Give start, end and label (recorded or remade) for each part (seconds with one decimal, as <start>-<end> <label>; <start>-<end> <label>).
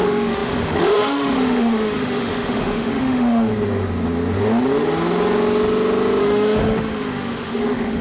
0.0-3.5 remade; 3.5-6.2 recorded; 6.2-8.0 remade